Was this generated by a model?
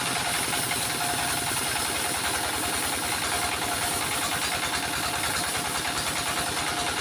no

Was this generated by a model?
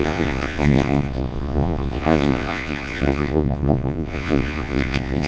yes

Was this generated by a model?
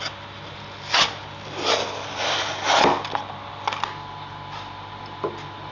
no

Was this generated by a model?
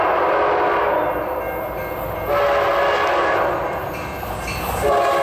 no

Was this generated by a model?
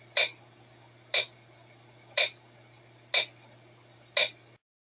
no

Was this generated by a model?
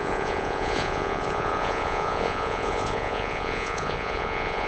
yes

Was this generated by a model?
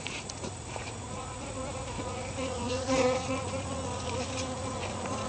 yes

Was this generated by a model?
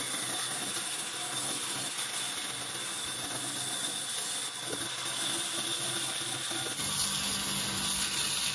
no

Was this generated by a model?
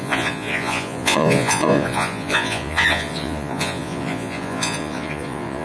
yes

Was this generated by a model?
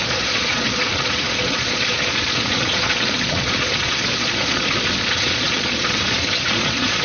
yes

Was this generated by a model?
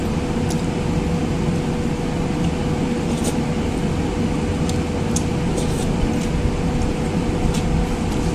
no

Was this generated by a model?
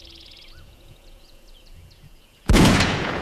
yes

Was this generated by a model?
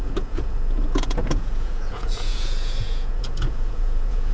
yes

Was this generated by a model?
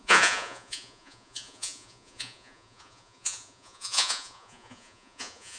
yes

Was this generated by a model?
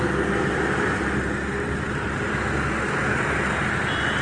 no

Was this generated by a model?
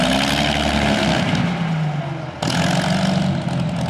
no